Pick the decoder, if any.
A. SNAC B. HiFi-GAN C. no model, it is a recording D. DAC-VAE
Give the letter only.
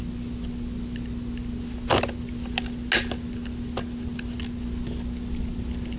C